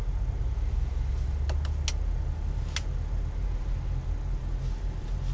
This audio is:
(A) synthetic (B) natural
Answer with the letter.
B